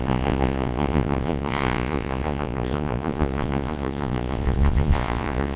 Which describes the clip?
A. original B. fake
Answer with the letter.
B